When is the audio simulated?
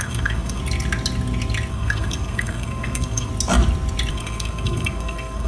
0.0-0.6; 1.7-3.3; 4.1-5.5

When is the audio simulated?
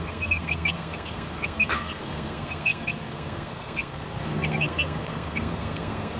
0.0-6.2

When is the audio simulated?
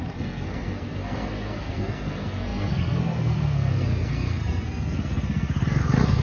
0.0-6.2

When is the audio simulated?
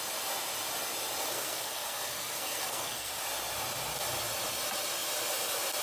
1.3-3.1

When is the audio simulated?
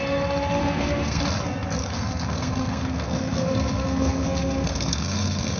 0.6-1.2; 1.8-5.6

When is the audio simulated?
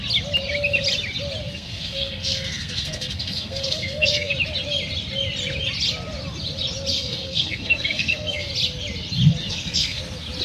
1.5-4.3; 6.9-8.5; 9.4-10.0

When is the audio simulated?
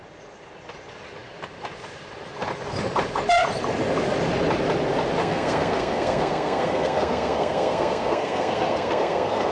5.2-9.5